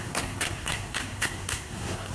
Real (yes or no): no